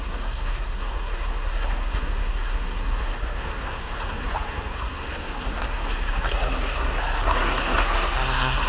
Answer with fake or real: fake